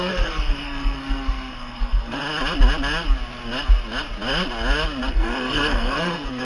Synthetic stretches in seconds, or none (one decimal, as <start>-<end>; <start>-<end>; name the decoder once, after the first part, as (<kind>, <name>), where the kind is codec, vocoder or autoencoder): 0.0-2.2 (codec, SNAC); 5.1-6.4